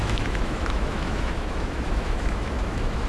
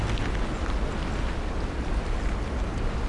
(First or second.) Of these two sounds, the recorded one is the second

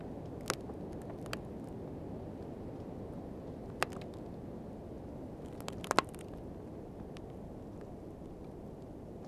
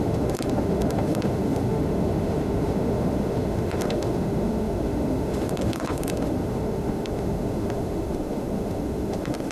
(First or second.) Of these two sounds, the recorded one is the first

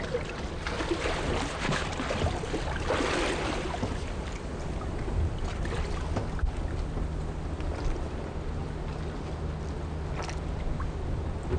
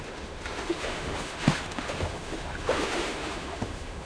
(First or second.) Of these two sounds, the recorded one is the first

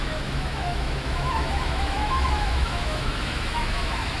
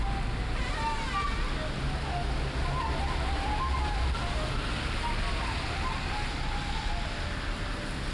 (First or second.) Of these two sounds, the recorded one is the second